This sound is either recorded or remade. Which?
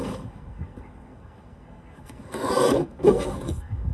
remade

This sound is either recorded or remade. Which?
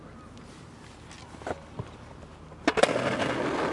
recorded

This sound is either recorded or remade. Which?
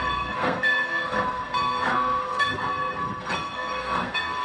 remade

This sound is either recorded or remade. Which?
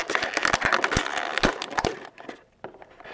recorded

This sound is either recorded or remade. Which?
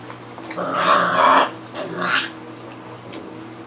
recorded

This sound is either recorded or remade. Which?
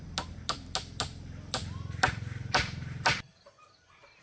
recorded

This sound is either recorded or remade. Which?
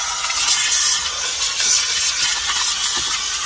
recorded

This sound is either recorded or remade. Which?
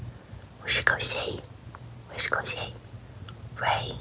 recorded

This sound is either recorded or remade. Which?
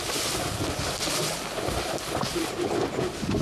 recorded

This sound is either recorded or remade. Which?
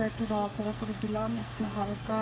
remade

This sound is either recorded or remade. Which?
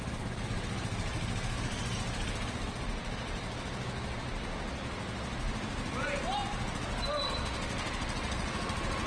recorded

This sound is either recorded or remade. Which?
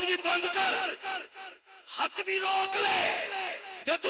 remade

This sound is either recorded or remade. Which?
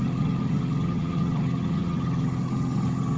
remade